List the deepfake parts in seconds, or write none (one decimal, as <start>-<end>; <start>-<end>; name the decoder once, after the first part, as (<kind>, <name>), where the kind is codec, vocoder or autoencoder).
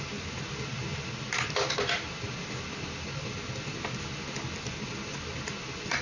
none